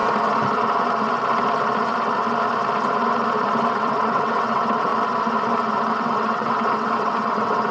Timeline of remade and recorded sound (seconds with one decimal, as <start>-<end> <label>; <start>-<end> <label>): 0.0-3.7 recorded; 3.7-4.9 remade; 4.9-5.9 recorded; 5.9-7.7 remade